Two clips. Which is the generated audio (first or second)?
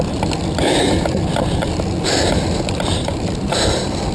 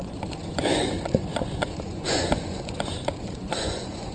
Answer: second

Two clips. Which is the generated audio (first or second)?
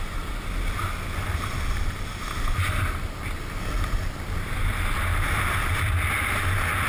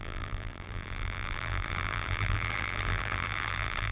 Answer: second